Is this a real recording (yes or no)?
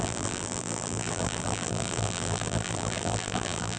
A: no